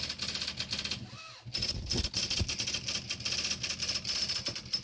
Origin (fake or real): real